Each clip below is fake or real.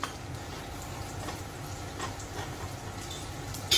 real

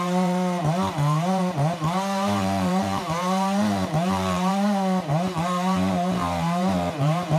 fake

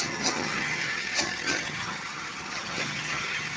fake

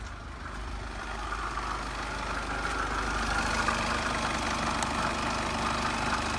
real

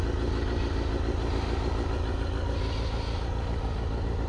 real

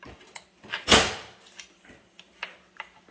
fake